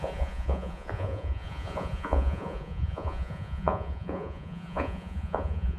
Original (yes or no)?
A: no